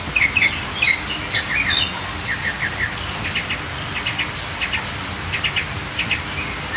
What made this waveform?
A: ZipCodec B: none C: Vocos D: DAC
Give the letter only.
B